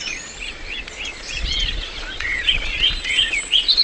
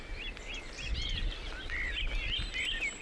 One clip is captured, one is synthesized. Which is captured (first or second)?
second